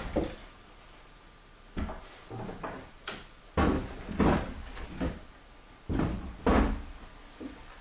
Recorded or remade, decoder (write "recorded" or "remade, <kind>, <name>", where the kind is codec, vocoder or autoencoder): recorded